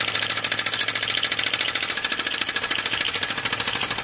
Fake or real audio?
real